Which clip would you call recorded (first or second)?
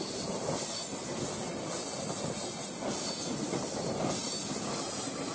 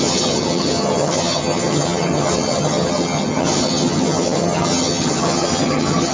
first